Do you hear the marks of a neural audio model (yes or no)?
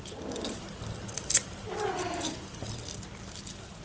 no